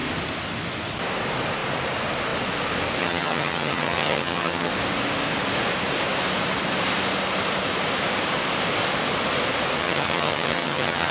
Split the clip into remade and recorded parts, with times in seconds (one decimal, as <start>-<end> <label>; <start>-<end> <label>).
0.0-3.0 recorded; 3.0-4.7 remade; 4.7-9.8 recorded; 9.8-11.1 remade